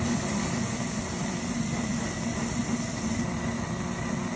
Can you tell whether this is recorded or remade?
recorded